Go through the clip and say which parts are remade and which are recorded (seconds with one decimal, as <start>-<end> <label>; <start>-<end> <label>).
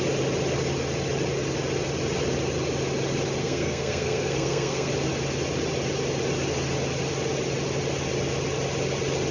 0.0-3.4 recorded; 3.4-4.9 remade; 4.9-9.3 recorded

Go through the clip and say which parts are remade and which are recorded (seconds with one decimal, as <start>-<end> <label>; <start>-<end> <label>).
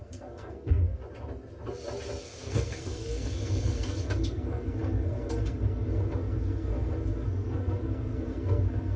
0.0-1.0 remade; 1.0-2.2 recorded; 2.2-9.0 remade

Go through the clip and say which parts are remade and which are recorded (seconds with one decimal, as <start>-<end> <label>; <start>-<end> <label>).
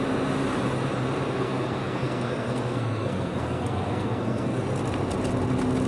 0.0-1.4 recorded; 1.4-4.6 remade; 4.6-5.9 recorded